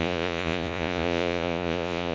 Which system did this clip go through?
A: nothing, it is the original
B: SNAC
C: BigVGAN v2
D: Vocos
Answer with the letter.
D